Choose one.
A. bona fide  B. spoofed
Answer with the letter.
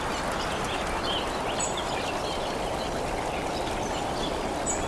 A